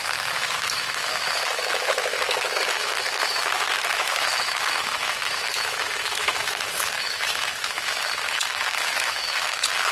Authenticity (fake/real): fake